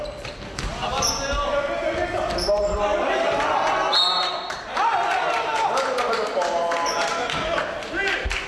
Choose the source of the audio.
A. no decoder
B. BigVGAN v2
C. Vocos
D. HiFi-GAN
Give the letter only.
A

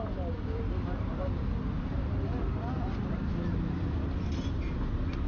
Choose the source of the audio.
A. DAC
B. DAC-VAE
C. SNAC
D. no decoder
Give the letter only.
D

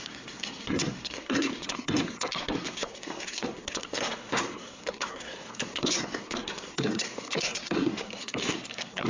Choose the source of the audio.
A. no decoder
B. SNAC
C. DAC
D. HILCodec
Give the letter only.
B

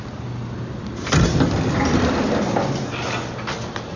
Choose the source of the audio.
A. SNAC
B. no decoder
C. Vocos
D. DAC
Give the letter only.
B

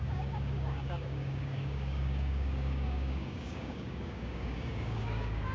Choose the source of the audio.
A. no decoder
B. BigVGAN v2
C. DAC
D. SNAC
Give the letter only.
C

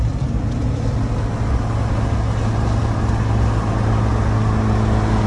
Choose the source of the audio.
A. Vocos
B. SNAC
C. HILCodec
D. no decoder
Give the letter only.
D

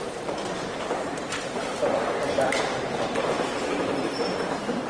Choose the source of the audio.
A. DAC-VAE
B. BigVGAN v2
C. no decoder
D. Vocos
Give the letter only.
B